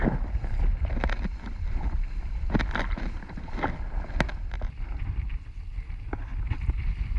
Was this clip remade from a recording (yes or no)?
no